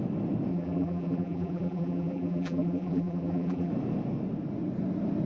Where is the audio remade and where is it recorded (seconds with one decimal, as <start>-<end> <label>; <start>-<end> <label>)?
0.0-0.5 recorded; 0.5-3.7 remade; 3.7-5.3 recorded